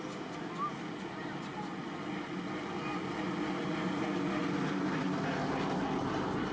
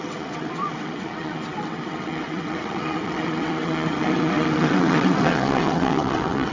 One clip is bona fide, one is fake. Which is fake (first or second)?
second